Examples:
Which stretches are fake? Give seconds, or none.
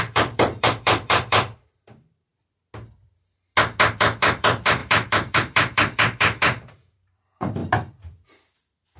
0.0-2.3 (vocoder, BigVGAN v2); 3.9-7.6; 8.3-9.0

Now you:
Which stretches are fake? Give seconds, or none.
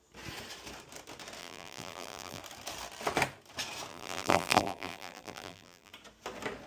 1.4-2.4 (vocoder, BigVGAN v2); 3.9-5.9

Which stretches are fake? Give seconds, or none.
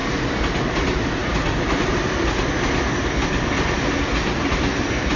1.2-1.8 (vocoder, BigVGAN v2)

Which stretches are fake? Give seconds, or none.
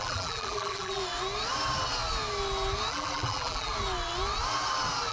0.0-1.0 (vocoder, BigVGAN v2); 2.9-3.7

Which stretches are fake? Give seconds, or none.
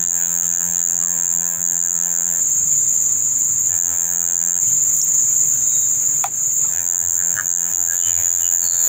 0.0-2.4 (vocoder, BigVGAN v2); 3.7-4.6; 6.7-8.9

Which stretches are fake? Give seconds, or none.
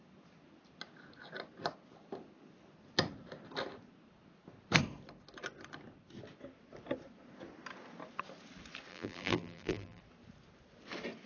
8.9-10.0 (vocoder, BigVGAN v2)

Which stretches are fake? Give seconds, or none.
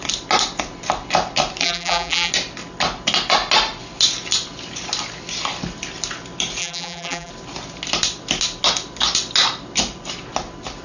1.6-2.3 (vocoder, BigVGAN v2); 6.6-7.3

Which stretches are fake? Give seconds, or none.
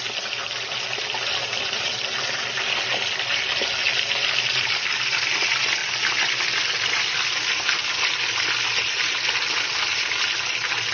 1.4-2.2 (vocoder, BigVGAN v2)